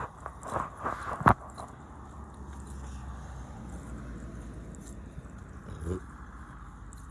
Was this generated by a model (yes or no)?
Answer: no